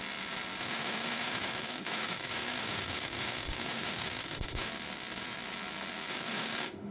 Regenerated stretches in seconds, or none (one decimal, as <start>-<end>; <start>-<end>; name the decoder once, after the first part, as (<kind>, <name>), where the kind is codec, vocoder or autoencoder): 0.6-4.7 (autoencoder, DAC-VAE); 6.1-6.9